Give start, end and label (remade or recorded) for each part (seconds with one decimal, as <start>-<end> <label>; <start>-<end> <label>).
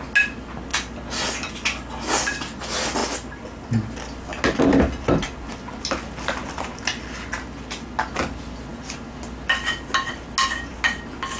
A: 0.0-11.4 recorded